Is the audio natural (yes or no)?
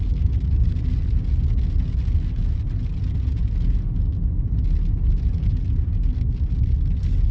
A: yes